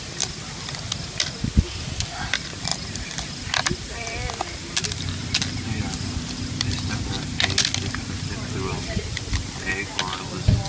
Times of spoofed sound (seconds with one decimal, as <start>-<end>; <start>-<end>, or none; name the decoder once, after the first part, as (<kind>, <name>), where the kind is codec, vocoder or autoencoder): 2.7-4.3 (vocoder, BigVGAN v2)